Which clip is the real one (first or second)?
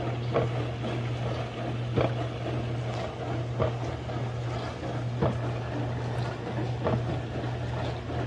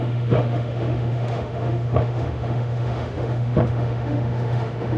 first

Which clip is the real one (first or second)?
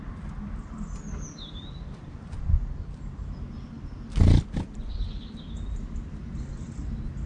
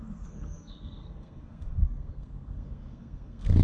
first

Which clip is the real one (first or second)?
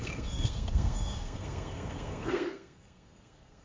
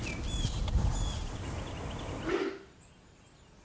second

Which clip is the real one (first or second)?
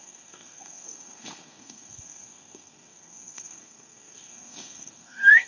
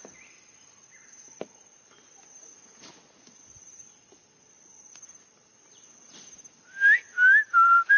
second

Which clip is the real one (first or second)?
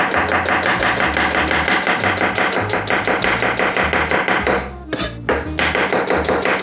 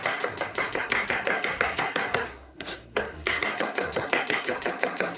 first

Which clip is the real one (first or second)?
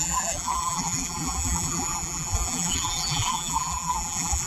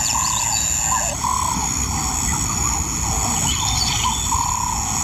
second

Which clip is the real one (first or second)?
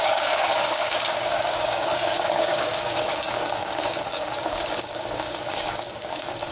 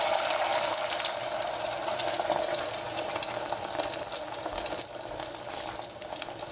second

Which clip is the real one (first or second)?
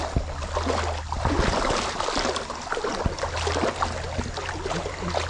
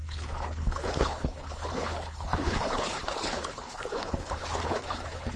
first